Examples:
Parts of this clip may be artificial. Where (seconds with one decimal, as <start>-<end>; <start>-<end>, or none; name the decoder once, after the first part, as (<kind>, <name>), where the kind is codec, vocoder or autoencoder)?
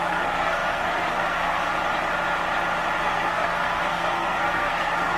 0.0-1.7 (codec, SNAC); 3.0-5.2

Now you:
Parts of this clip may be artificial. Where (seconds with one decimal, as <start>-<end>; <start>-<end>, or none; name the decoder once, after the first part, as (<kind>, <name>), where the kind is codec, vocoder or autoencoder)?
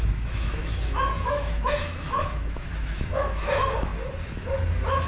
0.0-3.9 (autoencoder, DAC-VAE)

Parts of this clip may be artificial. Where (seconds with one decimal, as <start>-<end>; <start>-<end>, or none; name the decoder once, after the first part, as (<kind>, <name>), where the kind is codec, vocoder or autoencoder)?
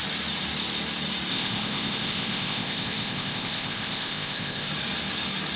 1.3-4.7 (codec, ZipCodec)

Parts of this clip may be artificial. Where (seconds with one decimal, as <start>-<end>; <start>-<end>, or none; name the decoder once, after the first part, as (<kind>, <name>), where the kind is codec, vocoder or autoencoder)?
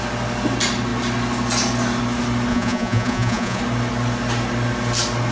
2.5-3.6 (vocoder, Vocos)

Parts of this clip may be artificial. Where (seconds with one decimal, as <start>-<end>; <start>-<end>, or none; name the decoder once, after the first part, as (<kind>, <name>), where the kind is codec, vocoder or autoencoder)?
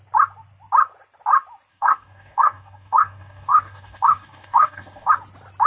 1.7-5.1 (codec, DAC)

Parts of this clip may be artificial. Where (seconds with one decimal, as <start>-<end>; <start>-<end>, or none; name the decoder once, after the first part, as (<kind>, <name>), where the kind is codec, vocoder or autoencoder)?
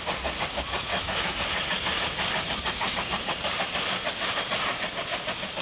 0.9-1.4 (autoencoder, DAC-VAE)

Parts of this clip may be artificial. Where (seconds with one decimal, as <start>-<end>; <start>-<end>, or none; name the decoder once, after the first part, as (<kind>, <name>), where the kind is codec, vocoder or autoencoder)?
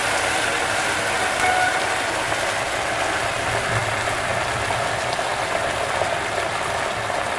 none